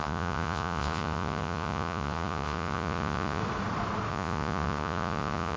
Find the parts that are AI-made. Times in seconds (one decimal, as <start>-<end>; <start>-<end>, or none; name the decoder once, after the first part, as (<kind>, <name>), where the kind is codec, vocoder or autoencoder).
0.0-3.4 (vocoder, Vocos); 4.1-5.6